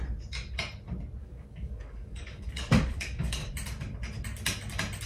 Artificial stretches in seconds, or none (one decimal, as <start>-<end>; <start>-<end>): 1.2-3.5